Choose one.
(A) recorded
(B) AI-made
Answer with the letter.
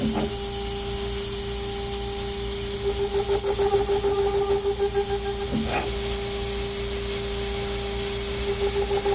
A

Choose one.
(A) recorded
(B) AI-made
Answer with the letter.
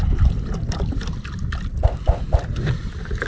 A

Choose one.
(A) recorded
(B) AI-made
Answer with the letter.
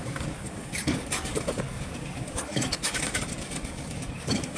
B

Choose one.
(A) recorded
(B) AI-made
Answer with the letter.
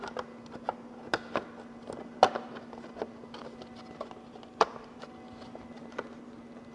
A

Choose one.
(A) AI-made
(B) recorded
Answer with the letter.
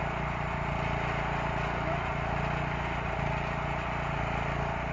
B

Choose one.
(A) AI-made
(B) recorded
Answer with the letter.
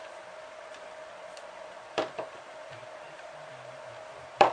A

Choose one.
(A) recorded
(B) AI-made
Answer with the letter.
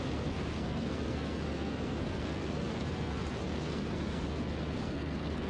B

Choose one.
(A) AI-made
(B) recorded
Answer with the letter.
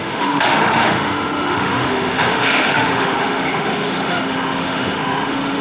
A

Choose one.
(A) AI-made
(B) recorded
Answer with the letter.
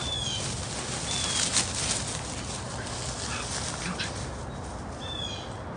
B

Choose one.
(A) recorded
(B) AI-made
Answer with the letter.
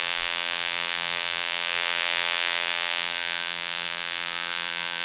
B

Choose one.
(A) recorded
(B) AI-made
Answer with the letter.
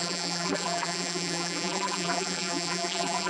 B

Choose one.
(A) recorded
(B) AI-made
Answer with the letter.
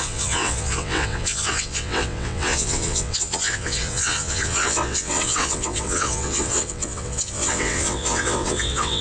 B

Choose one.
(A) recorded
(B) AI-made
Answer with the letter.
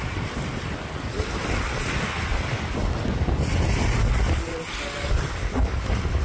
A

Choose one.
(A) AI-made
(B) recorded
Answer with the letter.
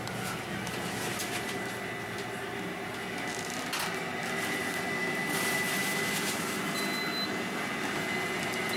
B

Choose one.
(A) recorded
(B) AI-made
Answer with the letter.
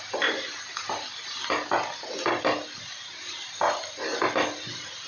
A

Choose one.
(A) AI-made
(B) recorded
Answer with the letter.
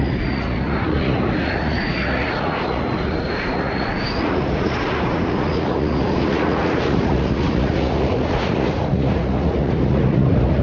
A